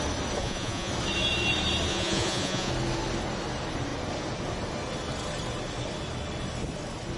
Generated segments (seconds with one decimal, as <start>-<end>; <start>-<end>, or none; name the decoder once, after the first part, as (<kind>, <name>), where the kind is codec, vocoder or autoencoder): 0.4-0.9 (vocoder, Vocos); 1.9-2.7